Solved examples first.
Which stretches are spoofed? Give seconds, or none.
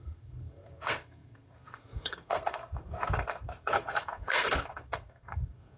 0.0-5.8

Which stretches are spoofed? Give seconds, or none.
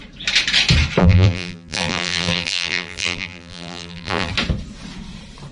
1.0-4.3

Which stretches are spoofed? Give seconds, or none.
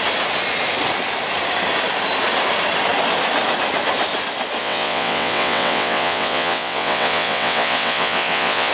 4.6-8.7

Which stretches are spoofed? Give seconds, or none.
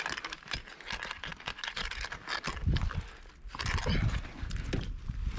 none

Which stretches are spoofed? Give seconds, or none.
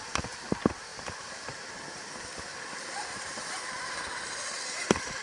0.9-2.0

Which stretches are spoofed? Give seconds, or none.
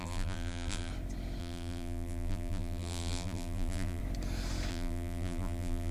0.0-0.9; 1.4-4.0; 4.7-5.9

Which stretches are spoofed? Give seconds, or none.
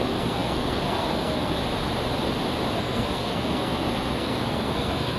0.0-1.6; 2.8-5.2